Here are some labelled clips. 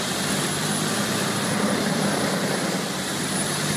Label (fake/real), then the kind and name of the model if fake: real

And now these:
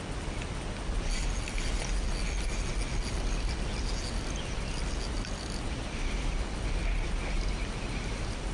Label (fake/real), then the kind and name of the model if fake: real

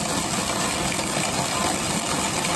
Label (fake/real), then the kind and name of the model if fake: real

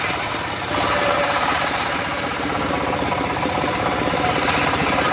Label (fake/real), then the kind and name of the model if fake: fake, vocoder, BigVGAN v2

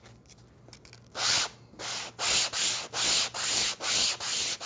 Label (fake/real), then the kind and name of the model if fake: real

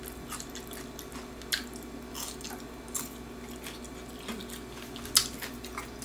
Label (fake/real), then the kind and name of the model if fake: real